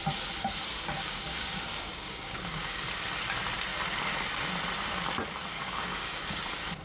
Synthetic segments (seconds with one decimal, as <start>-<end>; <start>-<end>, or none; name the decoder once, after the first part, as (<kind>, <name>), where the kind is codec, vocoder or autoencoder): 0.7-2.8 (codec, DAC); 5.5-6.2